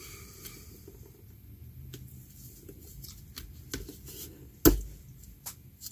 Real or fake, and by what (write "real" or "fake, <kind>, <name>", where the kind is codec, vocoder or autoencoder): real